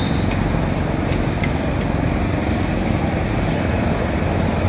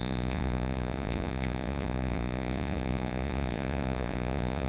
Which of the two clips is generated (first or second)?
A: second